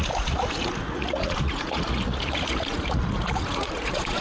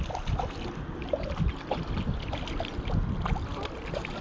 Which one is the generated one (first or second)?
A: first